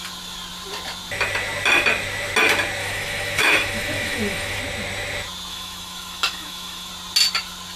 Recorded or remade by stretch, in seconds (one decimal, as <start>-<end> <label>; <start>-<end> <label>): 0.0-2.8 recorded; 2.8-4.6 remade; 4.6-5.5 recorded; 5.5-6.9 remade; 6.9-7.8 recorded